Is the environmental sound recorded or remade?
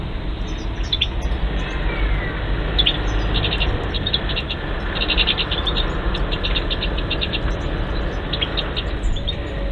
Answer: recorded